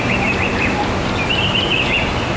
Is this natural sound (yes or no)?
yes